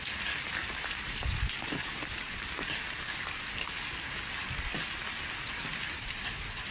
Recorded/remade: recorded